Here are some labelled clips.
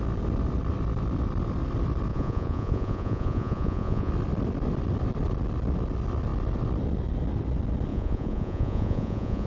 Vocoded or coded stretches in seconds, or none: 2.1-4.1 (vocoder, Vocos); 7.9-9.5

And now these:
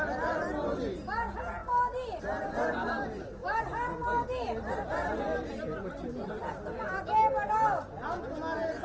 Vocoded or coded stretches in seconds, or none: none